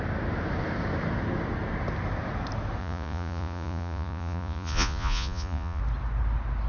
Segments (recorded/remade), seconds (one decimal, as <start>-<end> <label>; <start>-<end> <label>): 0.0-2.8 recorded; 2.8-5.8 remade; 5.8-6.7 recorded